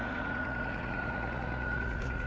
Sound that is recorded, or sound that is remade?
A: remade